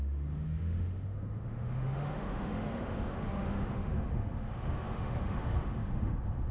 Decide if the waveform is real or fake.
fake